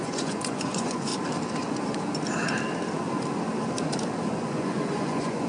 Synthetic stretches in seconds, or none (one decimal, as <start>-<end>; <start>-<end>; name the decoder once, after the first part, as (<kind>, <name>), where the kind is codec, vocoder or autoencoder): 0.0-1.1 (vocoder, Vocos); 4.4-5.5